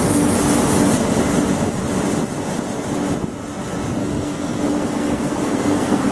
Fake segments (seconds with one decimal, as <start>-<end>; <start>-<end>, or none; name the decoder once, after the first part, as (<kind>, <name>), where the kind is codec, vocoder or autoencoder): 4.0-6.1 (codec, SNAC)